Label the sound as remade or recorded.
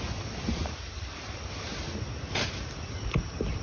recorded